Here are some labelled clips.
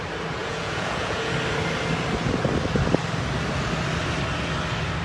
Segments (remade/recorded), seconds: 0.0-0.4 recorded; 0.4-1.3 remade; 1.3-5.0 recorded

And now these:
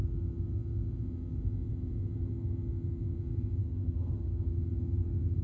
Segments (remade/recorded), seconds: 0.0-3.6 recorded; 3.6-4.4 remade; 4.4-5.4 recorded

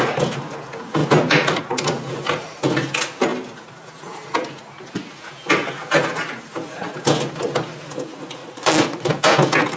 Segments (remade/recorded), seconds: 0.0-8.4 recorded; 8.4-9.1 remade; 9.1-9.8 recorded

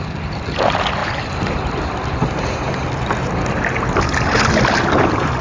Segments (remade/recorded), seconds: 0.0-5.4 recorded

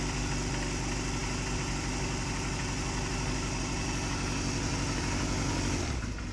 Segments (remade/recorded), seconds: 0.0-6.3 recorded

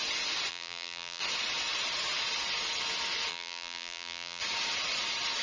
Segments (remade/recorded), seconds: 0.0-0.5 recorded; 0.5-1.2 remade; 1.2-3.3 recorded; 3.3-4.4 remade; 4.4-5.4 recorded

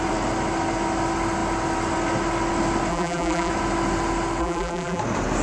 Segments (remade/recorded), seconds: 0.0-2.9 recorded; 2.9-3.5 remade; 3.5-4.4 recorded; 4.4-5.0 remade; 5.0-5.4 recorded